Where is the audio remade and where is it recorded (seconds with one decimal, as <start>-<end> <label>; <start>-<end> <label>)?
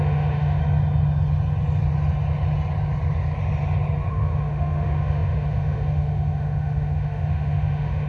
0.0-0.6 remade; 0.6-4.1 recorded; 4.1-8.1 remade